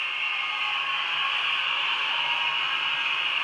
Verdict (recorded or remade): recorded